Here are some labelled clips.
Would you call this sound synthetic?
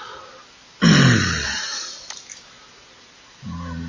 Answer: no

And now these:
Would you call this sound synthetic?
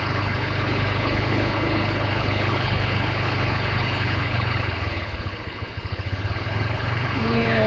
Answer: yes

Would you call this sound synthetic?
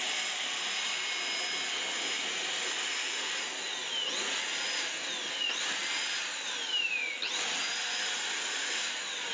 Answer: no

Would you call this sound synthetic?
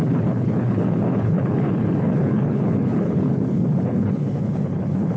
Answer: yes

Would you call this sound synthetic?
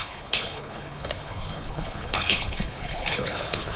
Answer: yes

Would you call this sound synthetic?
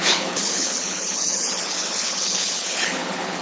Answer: yes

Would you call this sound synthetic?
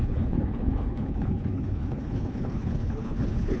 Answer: yes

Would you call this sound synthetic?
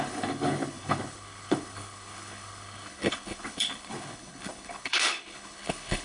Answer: yes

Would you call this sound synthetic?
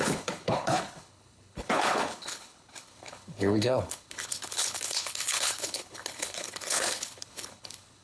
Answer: yes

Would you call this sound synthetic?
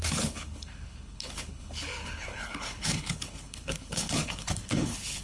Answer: yes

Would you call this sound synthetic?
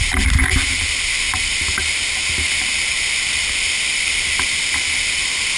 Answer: no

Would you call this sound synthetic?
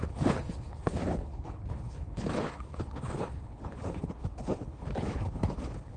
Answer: yes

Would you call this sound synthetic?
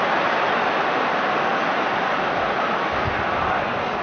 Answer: no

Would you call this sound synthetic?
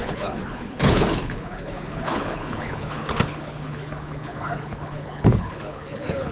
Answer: yes